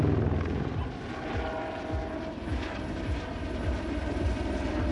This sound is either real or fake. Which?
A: real